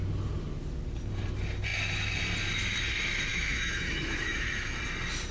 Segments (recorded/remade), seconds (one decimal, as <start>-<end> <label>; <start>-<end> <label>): 0.0-3.3 recorded; 3.3-4.8 remade; 4.8-5.3 recorded